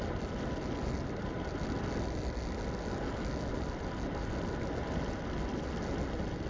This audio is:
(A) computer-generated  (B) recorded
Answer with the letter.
B